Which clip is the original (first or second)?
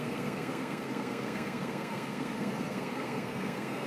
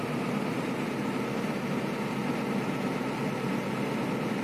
second